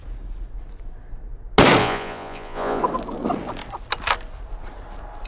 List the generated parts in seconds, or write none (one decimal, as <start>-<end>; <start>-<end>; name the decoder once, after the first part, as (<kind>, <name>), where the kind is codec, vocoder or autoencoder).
1.8-2.8 (vocoder, Vocos)